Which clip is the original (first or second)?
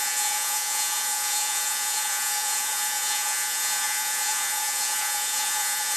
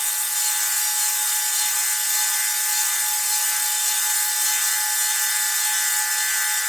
second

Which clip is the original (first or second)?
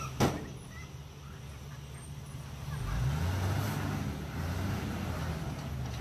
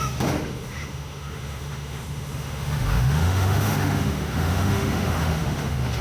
first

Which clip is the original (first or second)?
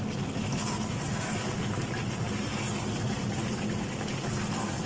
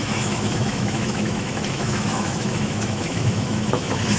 first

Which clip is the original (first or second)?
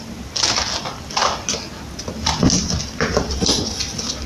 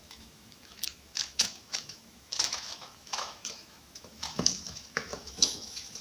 first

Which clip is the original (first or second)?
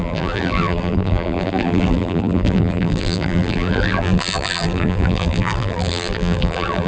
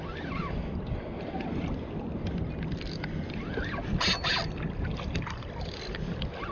second